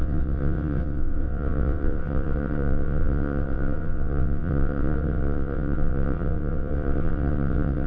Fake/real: fake